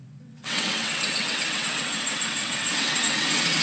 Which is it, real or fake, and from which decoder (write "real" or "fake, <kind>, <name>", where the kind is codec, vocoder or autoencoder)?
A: fake, vocoder, WaveNeXt